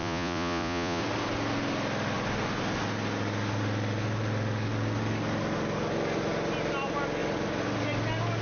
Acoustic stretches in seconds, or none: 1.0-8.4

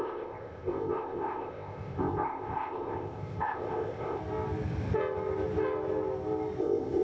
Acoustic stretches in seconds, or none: 4.2-6.6

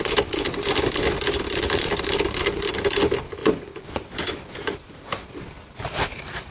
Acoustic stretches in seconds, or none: 0.0-3.4; 4.0-6.5

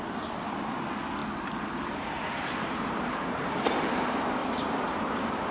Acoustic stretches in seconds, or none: 0.0-1.2; 3.5-4.4

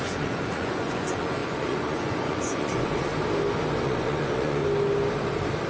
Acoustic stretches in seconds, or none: 3.1-3.8; 4.6-5.7